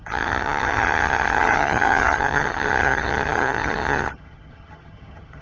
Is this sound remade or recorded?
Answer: remade